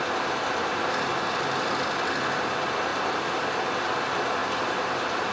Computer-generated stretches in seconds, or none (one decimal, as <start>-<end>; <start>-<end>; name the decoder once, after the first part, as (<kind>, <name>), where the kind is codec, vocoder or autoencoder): 0.7-1.7 (vocoder, BigVGAN v2); 2.9-3.6; 4.4-5.3